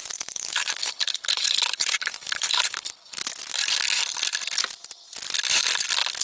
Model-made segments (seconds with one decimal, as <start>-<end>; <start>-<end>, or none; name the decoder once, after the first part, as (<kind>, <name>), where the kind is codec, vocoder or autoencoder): 0.8-3.2 (codec, HILCodec)